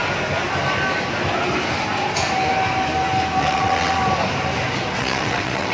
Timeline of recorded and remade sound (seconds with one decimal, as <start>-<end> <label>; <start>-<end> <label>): 0.0-3.4 recorded; 3.4-4.0 remade; 4.0-5.0 recorded; 5.0-5.7 remade